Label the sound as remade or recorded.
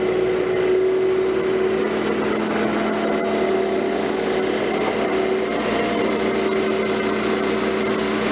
recorded